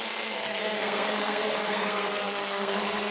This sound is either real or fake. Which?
fake